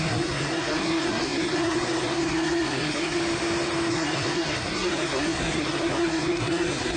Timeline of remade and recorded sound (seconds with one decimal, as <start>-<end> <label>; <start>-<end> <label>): 0.0-3.2 remade; 3.2-3.9 recorded; 3.9-7.0 remade